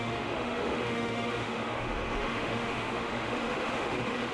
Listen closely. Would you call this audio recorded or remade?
remade